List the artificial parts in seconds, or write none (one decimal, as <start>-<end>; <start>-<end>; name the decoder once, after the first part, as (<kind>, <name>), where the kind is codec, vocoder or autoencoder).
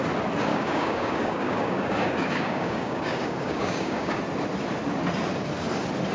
0.5-4.2 (codec, DAC)